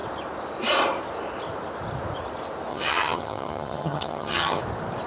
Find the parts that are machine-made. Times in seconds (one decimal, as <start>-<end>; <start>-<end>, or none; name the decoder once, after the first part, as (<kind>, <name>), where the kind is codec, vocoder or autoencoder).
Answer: 2.7-4.6 (vocoder, HiFi-GAN)